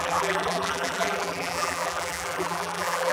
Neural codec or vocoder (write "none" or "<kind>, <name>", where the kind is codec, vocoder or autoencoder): vocoder, BigVGAN v2